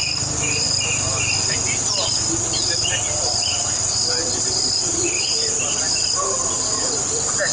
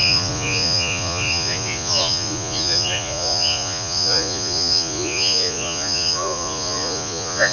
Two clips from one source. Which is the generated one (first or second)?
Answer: second